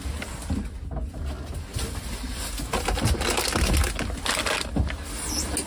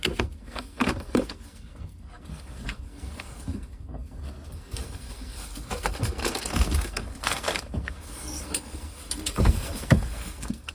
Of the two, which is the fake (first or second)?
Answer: second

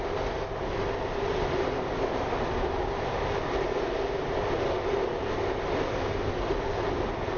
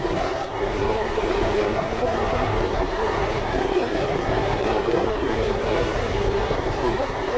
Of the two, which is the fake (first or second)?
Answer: second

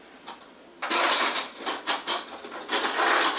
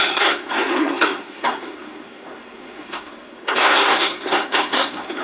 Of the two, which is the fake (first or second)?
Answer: second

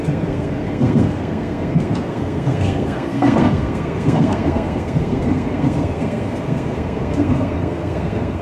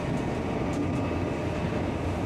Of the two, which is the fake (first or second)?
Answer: first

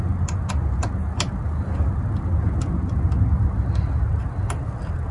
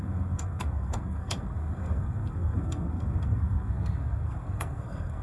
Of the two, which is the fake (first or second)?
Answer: second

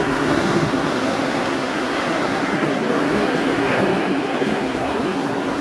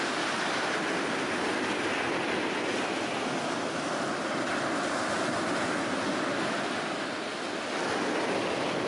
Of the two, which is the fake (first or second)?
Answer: first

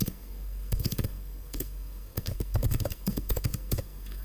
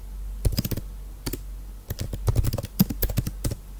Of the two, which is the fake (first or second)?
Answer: first